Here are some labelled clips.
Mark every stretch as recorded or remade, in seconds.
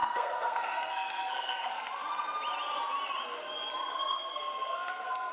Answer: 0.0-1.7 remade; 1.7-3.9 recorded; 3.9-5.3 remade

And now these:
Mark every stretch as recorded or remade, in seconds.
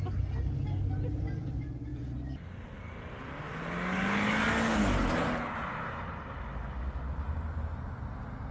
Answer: 0.0-8.5 recorded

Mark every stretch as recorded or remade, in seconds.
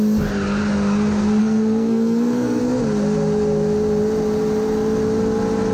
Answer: 0.0-1.4 recorded; 1.4-2.6 remade; 2.6-5.7 recorded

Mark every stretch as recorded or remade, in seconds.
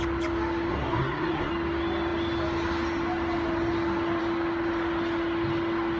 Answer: 0.0-0.7 recorded; 0.7-1.5 remade; 1.5-6.0 recorded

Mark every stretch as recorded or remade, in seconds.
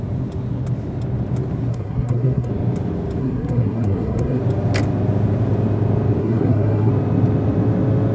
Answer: 0.0-1.7 recorded; 1.7-2.5 remade; 2.5-3.2 recorded; 3.2-4.4 remade; 4.4-6.2 recorded; 6.2-6.9 remade; 6.9-8.1 recorded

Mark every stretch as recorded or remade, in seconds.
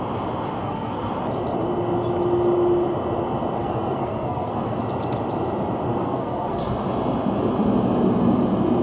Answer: 0.0-0.6 recorded; 0.6-1.1 remade; 1.1-3.6 recorded; 3.6-4.8 remade; 4.8-5.9 recorded; 5.9-6.6 remade; 6.6-8.8 recorded